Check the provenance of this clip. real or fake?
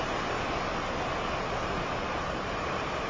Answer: real